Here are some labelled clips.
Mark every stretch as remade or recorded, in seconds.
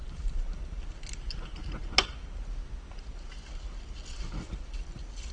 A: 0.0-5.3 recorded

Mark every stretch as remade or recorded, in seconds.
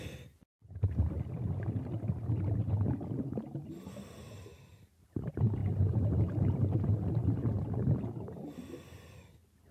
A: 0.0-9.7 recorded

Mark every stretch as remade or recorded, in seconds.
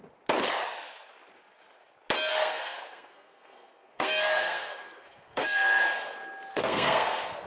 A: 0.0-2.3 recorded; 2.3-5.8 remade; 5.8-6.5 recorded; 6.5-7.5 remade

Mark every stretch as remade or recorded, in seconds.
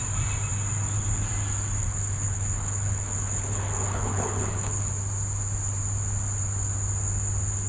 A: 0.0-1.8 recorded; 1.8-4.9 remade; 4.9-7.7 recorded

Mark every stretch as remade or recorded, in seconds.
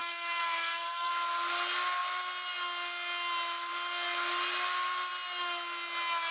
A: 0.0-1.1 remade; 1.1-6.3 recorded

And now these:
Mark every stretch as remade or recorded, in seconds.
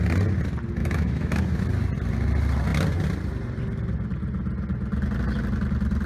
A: 0.0-0.8 recorded; 0.8-1.4 remade; 1.4-6.1 recorded